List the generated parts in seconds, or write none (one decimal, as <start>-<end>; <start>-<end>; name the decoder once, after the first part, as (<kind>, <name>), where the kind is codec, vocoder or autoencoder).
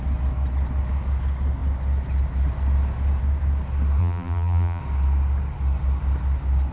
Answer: 4.0-4.8 (vocoder, BigVGAN v2)